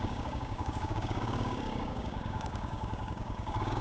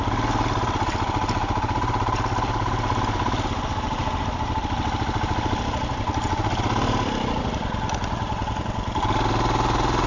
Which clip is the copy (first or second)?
first